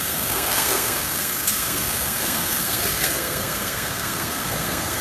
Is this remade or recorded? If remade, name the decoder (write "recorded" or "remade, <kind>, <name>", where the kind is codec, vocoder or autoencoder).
remade, codec, SNAC